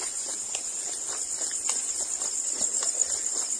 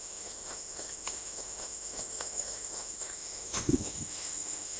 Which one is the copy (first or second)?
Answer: second